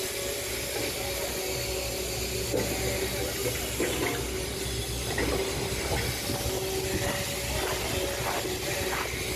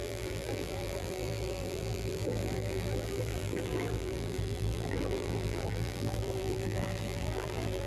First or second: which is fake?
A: second